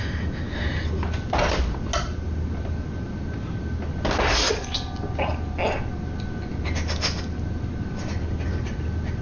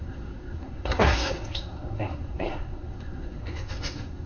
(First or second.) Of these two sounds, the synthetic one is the second